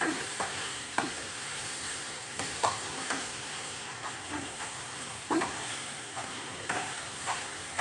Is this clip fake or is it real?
fake